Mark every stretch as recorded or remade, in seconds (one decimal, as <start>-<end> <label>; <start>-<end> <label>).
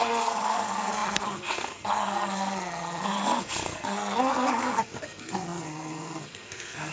0.0-6.9 remade